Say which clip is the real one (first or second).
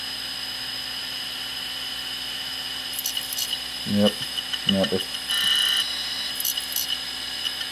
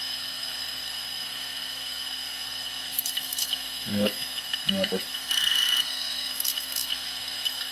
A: first